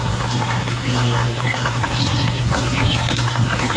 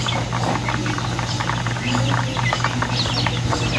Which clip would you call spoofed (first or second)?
first